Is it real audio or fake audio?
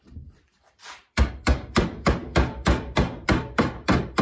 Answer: fake